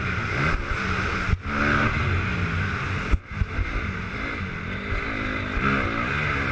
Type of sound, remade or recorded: recorded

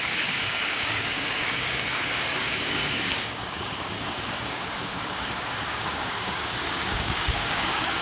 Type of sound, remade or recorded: remade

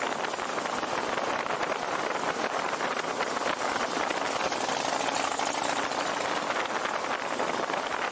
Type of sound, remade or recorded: recorded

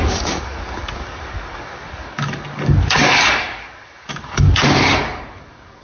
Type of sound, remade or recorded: remade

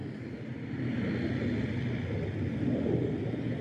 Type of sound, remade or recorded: recorded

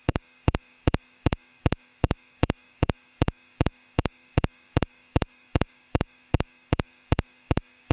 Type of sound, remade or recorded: remade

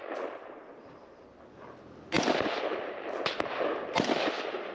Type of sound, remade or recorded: recorded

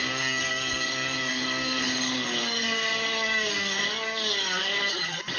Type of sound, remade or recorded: remade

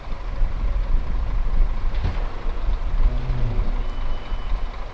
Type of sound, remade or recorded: recorded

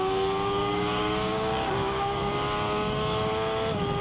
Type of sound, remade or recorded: remade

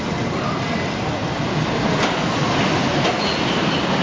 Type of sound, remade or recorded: recorded